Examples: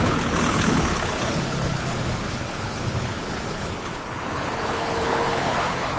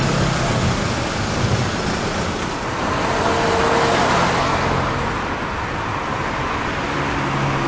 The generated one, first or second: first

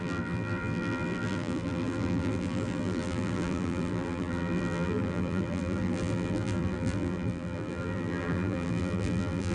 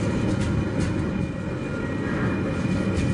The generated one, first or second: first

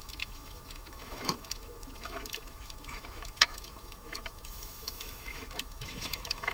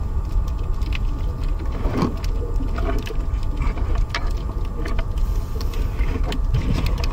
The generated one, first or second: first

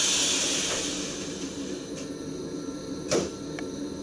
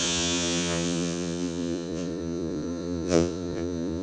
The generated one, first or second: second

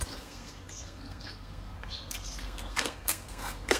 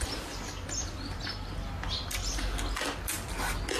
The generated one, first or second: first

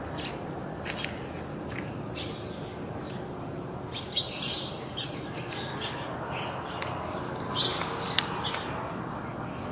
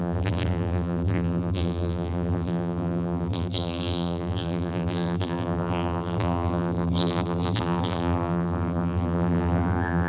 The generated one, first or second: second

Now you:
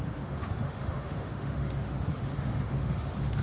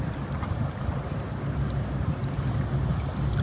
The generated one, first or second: first